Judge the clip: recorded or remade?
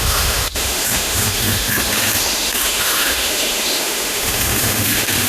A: remade